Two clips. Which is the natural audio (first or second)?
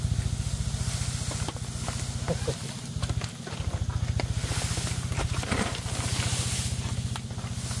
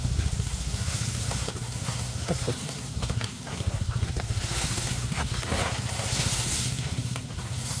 first